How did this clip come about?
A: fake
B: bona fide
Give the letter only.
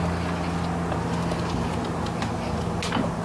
B